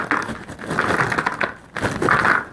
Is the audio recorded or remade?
recorded